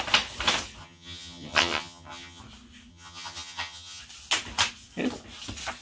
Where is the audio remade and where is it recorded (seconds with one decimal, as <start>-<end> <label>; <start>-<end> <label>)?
0.0-0.8 recorded; 0.8-2.4 remade; 2.4-2.9 recorded; 2.9-4.0 remade; 4.0-5.8 recorded